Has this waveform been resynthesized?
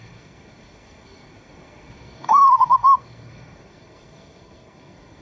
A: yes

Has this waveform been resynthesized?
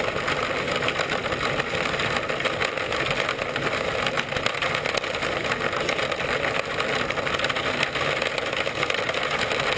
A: no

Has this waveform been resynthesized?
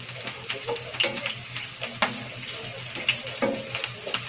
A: no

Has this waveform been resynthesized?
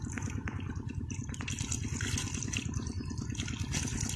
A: no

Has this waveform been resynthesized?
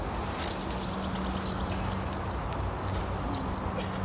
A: no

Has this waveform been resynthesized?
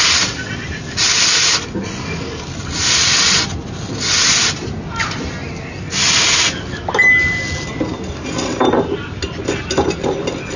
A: no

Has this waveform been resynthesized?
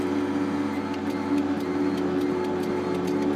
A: no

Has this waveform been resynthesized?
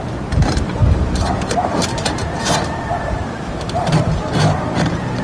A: yes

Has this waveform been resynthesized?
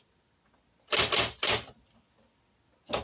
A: no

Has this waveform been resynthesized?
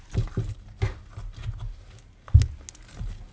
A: no